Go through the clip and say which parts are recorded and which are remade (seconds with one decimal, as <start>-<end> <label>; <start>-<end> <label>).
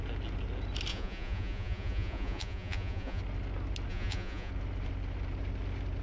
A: 0.0-0.9 recorded; 0.9-3.2 remade; 3.2-3.9 recorded; 3.9-4.5 remade; 4.5-6.0 recorded